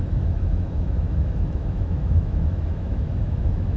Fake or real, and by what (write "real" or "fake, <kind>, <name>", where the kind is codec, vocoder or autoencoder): fake, autoencoder, DAC-VAE